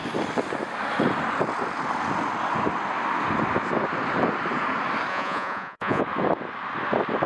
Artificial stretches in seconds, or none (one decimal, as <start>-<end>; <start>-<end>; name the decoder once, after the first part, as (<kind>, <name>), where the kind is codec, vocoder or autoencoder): 5.1-6.0 (vocoder, Vocos)